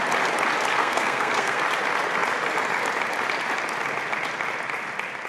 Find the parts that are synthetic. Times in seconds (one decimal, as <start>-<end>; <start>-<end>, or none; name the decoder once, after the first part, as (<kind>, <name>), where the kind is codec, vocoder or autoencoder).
0.8-1.6 (codec, SNAC)